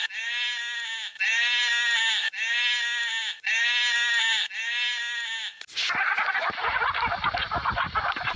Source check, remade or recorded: recorded